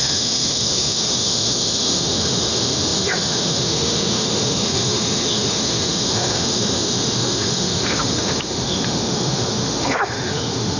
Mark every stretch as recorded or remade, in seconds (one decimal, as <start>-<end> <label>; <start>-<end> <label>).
0.0-10.8 remade